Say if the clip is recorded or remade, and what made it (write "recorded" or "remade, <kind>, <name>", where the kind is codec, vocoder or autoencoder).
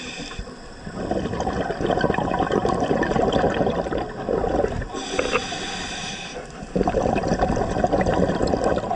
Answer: recorded